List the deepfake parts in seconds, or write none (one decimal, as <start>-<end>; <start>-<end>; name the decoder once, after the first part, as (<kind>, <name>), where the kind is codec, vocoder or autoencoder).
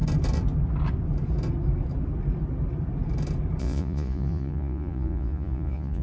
3.6-6.0 (vocoder, Vocos)